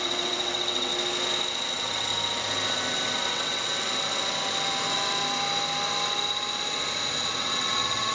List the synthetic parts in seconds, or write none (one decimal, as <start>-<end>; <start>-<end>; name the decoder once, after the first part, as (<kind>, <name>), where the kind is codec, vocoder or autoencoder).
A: 0.0-0.9 (vocoder, WaveNeXt); 1.7-2.1; 3.3-3.7; 7.1-8.1